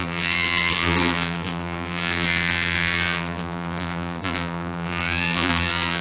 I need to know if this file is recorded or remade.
remade